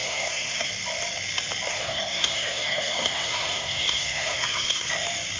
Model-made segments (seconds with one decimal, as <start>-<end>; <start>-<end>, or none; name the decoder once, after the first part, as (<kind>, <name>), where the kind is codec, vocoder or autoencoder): 0.0-0.7 (codec, SNAC); 1.7-4.9